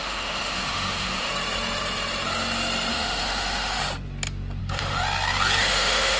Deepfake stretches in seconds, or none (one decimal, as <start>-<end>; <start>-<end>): 0.0-1.3; 2.9-3.8; 4.6-5.0; 5.6-6.2